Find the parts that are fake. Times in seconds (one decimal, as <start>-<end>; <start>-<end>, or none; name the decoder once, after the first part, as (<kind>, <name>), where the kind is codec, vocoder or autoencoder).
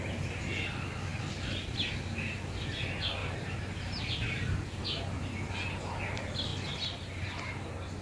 3.2-4.0 (vocoder, BigVGAN v2)